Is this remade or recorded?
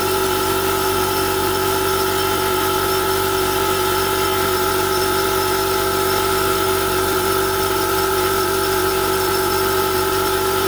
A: remade